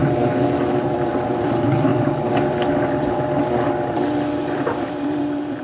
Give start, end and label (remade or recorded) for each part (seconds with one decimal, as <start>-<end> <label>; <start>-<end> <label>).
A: 0.0-0.7 recorded; 0.7-5.6 remade